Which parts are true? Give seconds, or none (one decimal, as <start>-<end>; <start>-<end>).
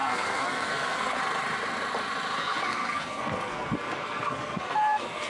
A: 1.2-2.4